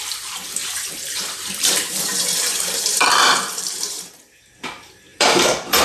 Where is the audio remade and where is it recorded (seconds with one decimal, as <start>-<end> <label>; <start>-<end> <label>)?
0.0-0.6 recorded; 0.6-4.1 remade; 4.1-5.1 recorded; 5.1-5.8 remade